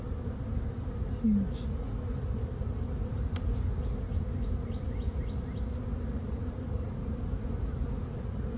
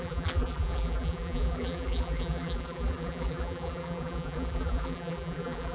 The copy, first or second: second